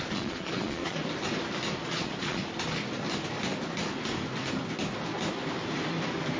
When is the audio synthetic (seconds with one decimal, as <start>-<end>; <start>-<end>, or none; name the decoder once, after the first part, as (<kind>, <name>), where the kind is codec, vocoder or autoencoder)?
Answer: 0.0-1.0 (vocoder, Vocos); 1.8-2.4